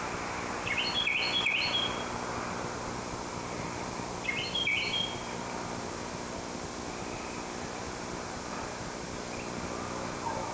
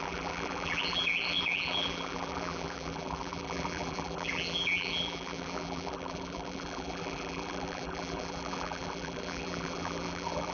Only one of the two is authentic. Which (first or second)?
first